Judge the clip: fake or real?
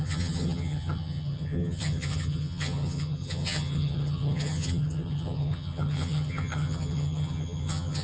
fake